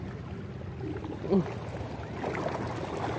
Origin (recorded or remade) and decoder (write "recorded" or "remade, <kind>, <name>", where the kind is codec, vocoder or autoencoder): recorded